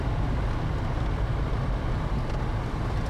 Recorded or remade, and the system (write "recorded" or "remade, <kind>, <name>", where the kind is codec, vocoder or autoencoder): recorded